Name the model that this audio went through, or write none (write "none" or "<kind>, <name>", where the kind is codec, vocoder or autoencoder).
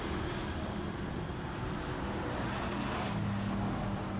none